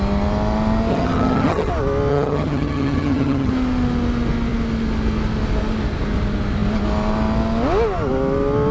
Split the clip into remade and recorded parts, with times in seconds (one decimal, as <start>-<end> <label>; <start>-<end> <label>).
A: 0.0-0.9 recorded; 0.9-1.7 remade; 1.7-2.1 recorded; 2.1-3.5 remade; 3.5-8.7 recorded